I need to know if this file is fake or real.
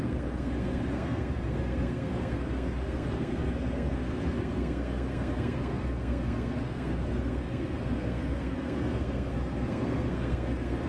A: fake